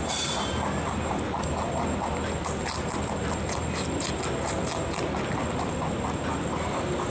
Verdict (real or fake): real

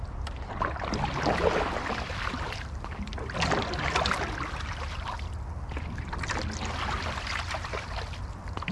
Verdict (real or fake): real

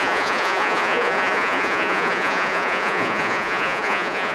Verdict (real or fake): fake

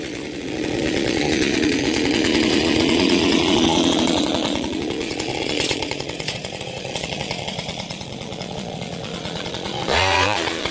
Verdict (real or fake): fake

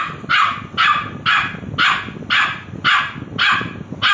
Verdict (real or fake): real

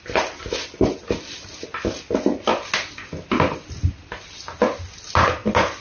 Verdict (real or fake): real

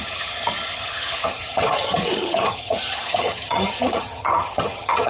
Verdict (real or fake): fake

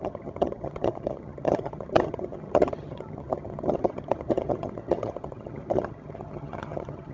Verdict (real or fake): fake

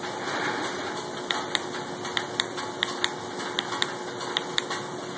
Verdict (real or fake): real